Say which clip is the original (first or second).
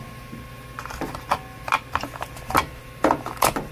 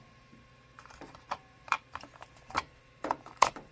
first